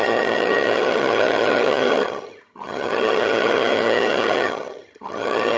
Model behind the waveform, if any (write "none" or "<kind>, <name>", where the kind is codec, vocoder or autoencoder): vocoder, HiFi-GAN